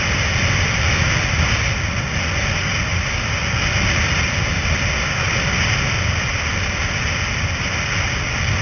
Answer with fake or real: real